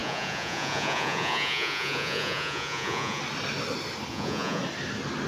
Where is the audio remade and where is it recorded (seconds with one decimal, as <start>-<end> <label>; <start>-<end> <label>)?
0.0-3.2 remade; 3.2-4.1 recorded; 4.1-4.6 remade; 4.6-5.3 recorded